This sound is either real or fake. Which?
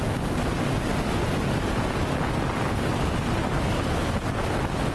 real